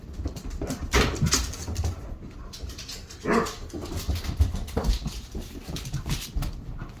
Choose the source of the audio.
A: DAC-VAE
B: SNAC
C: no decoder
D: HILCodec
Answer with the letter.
C